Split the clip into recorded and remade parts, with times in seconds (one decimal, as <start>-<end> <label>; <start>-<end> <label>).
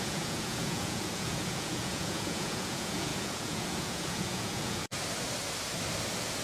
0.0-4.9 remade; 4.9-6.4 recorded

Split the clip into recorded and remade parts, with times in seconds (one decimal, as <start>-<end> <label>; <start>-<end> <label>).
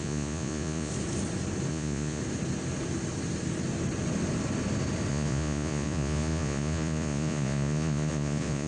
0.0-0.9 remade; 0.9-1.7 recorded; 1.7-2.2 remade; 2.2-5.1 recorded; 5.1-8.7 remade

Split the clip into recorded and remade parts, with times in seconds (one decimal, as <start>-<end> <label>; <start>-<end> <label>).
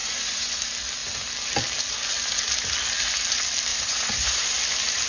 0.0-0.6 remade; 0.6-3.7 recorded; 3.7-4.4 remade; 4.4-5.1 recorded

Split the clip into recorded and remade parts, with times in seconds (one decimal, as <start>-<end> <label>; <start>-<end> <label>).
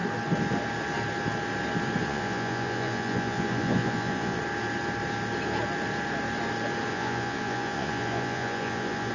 0.0-2.0 recorded; 2.0-4.4 remade; 4.4-6.9 recorded; 6.9-9.1 remade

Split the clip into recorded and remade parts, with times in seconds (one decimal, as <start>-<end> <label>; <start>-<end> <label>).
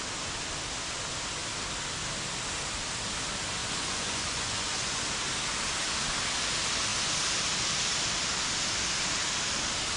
0.0-3.6 recorded; 3.6-5.0 remade; 5.0-10.0 recorded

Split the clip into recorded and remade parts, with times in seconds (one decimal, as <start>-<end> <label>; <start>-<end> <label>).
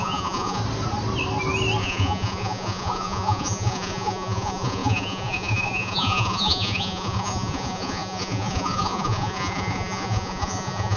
0.0-0.6 remade; 0.6-1.8 recorded; 1.8-11.0 remade